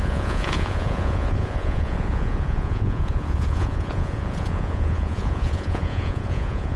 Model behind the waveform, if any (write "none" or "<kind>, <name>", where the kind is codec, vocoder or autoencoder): vocoder, Vocos